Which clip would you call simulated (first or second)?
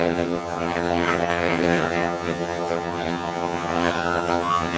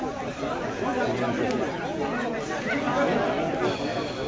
first